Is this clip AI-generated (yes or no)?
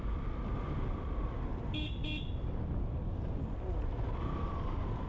no